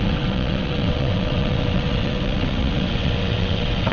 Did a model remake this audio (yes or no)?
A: yes